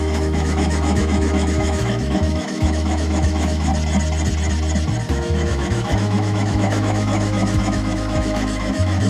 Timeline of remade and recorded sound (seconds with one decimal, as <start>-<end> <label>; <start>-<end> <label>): 0.0-3.7 remade; 3.7-5.1 recorded; 5.1-9.1 remade